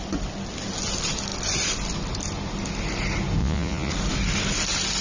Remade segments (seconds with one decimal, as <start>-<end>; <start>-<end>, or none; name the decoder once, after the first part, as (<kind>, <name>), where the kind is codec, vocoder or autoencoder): 3.4-3.9 (vocoder, Vocos)